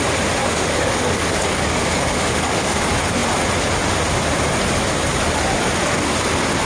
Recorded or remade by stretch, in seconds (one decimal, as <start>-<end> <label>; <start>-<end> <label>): 0.0-0.4 recorded; 0.4-2.8 remade; 2.8-6.6 recorded